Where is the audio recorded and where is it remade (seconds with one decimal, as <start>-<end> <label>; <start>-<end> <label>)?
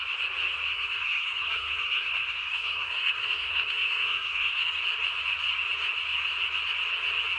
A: 0.0-0.7 recorded; 0.7-4.8 remade; 4.8-7.4 recorded